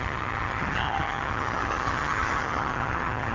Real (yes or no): no